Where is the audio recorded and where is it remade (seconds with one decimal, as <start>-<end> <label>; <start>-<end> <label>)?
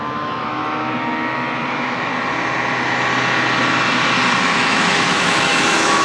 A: 0.0-0.6 remade; 0.6-1.7 recorded; 1.7-2.1 remade; 2.1-4.4 recorded; 4.4-6.0 remade